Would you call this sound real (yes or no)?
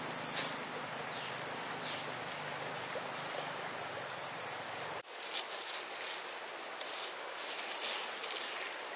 yes